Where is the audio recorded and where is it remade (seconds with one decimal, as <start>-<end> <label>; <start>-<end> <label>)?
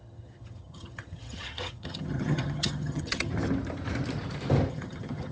0.0-3.3 remade; 3.3-4.7 recorded; 4.7-5.3 remade